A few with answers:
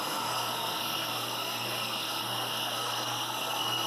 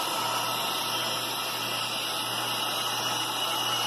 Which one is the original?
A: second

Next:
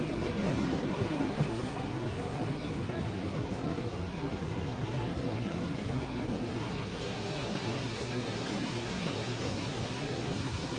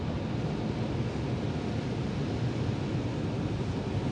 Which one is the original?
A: second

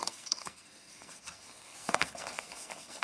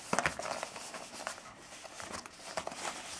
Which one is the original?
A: second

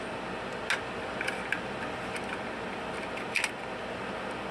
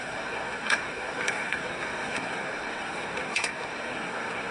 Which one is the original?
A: first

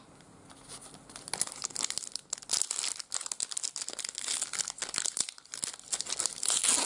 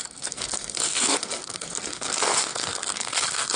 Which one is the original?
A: first